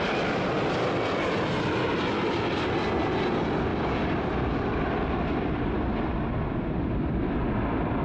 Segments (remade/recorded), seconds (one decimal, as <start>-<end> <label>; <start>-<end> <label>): 0.0-3.7 recorded; 3.7-5.8 remade; 5.8-8.0 recorded